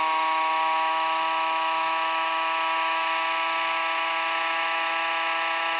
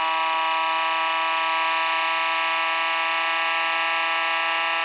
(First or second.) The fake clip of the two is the first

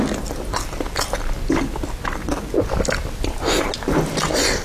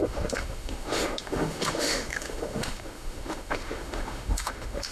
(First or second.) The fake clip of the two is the second